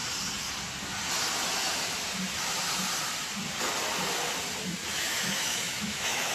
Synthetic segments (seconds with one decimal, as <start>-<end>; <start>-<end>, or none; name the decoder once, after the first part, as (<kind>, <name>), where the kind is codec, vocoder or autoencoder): 4.9-6.3 (autoencoder, DAC-VAE)